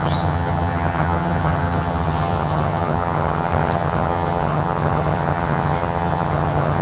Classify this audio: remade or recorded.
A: remade